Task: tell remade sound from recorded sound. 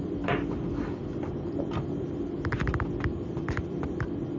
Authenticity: recorded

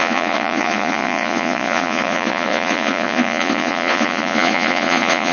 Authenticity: remade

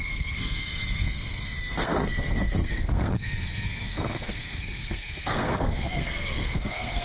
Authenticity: remade